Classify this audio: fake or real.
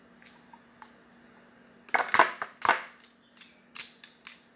real